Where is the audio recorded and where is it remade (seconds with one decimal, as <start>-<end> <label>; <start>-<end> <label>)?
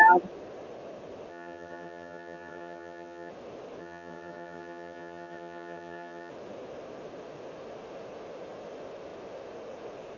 0.0-1.3 recorded; 1.3-3.3 remade; 3.3-3.8 recorded; 3.8-6.3 remade; 6.3-10.2 recorded